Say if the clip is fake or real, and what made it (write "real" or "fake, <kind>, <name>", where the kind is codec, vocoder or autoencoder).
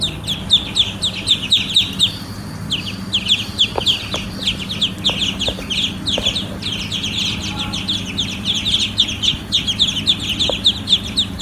real